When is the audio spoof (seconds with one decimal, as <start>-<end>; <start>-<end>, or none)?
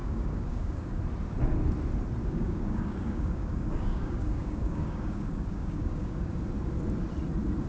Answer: 0.0-1.0; 2.2-6.4